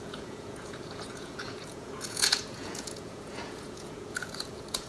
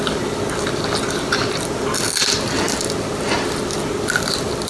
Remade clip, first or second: first